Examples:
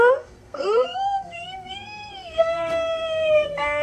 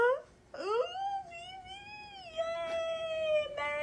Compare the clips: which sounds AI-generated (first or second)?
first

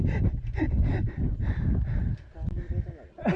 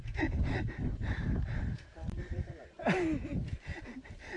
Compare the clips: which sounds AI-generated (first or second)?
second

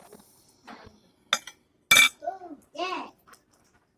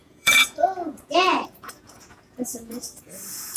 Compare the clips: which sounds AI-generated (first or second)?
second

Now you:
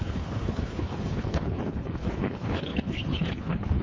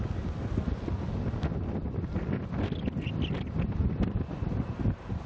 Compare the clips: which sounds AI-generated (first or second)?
first